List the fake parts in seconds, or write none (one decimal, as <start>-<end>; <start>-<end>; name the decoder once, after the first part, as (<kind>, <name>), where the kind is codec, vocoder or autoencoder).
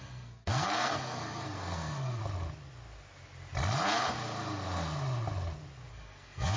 0.0-2.2 (codec, SNAC); 5.9-6.6